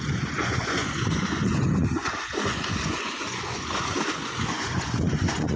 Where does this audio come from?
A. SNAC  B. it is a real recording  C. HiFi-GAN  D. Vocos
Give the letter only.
D